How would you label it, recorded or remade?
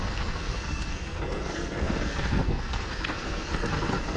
remade